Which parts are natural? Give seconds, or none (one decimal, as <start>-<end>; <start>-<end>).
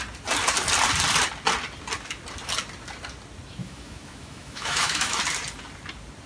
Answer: 0.0-3.6; 5.2-6.3